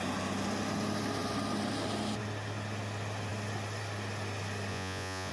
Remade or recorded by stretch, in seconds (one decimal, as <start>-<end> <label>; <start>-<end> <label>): 0.0-4.7 recorded; 4.7-5.3 remade